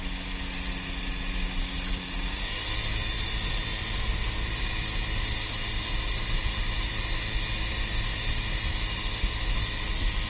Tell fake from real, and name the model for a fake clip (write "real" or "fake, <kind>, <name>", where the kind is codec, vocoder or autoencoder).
real